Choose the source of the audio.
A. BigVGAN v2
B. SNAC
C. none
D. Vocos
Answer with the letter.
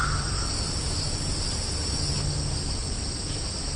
C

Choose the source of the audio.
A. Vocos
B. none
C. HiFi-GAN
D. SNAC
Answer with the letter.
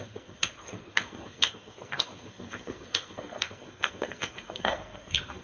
D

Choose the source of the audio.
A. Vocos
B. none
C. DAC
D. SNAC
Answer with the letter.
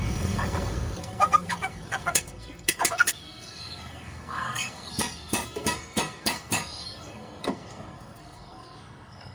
D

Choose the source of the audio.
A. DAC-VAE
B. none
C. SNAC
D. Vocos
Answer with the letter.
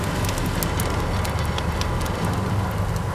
B